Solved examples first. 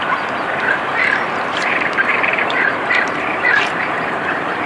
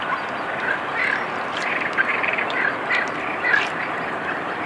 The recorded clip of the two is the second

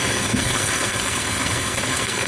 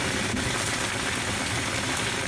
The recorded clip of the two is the second